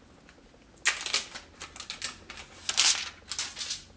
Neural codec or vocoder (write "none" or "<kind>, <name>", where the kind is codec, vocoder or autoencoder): none